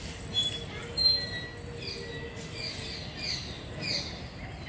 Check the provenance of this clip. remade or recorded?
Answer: recorded